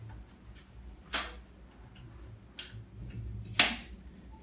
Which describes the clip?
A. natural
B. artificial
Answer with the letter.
A